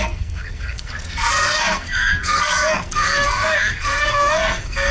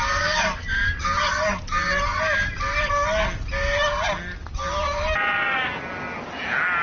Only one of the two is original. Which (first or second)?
second